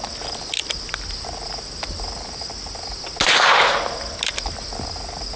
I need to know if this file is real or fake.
real